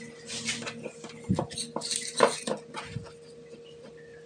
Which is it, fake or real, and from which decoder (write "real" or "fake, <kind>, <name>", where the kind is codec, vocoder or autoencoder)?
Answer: real